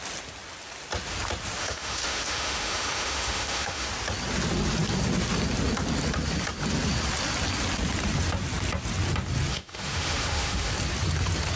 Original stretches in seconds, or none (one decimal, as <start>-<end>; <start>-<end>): 0.0-1.6; 3.9-9.5; 10.7-11.6